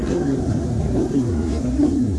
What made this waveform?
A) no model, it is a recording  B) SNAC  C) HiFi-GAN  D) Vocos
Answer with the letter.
B